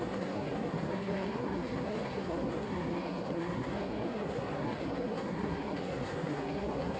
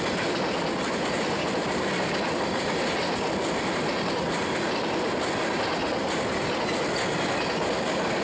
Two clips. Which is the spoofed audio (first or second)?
first